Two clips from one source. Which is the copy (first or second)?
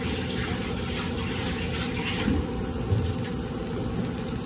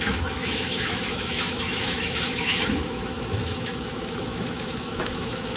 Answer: second